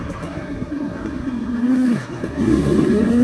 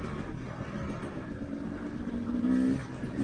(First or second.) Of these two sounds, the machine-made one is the first